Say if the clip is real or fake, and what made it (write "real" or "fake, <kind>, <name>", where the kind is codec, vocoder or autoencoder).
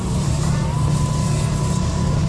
real